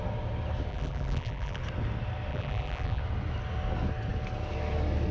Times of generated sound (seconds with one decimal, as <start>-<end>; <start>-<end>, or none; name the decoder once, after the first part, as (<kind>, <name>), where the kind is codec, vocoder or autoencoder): 0.7-1.6 (vocoder, BigVGAN v2); 2.3-3.0

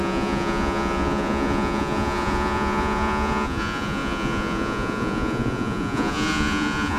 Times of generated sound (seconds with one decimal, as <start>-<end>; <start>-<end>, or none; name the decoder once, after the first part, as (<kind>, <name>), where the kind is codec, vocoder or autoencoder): 0.0-7.0 (vocoder, Vocos)